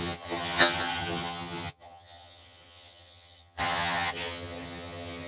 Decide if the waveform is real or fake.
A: fake